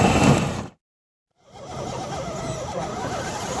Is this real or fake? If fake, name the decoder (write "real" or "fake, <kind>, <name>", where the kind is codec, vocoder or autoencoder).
fake, vocoder, BigVGAN v2